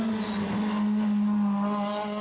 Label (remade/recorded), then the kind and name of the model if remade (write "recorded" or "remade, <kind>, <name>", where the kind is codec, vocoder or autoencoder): recorded